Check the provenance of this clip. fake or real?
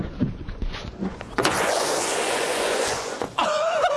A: fake